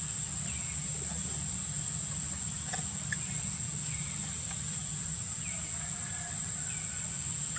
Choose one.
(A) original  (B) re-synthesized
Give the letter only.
A